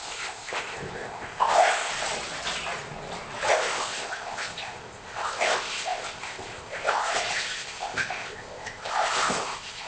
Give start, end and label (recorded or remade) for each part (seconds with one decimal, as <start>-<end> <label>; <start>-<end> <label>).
0.0-1.9 remade; 1.9-3.5 recorded; 3.5-9.9 remade